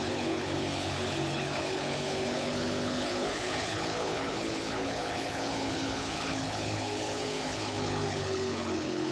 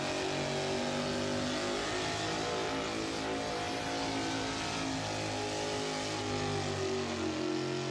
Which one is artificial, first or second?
first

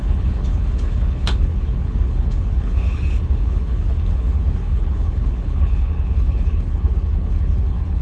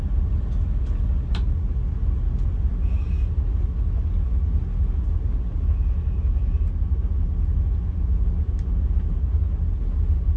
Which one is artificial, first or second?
first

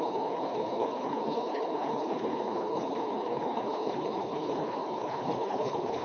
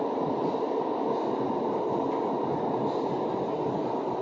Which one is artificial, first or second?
first